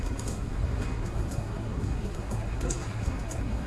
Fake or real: fake